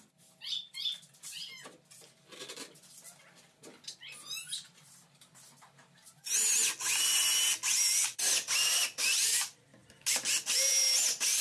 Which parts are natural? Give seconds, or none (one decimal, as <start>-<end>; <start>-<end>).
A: 0.0-11.4